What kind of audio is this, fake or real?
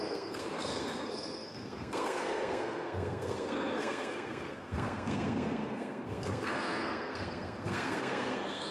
fake